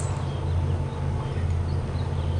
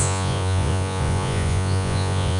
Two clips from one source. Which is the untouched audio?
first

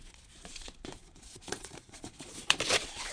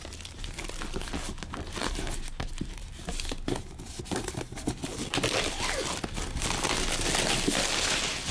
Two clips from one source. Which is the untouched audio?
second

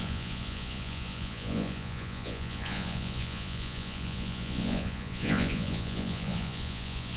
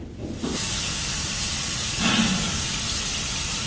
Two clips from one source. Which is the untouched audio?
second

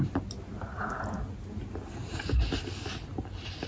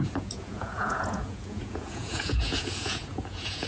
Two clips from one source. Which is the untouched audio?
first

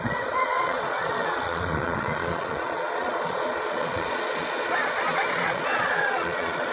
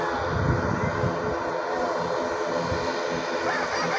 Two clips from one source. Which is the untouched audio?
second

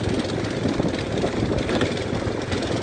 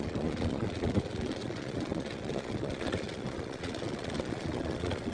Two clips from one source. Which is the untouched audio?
first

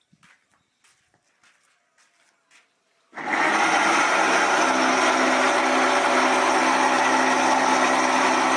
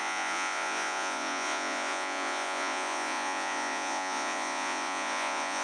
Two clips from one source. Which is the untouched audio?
first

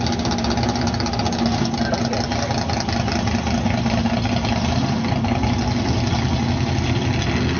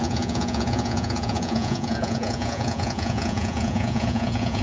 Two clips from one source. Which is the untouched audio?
first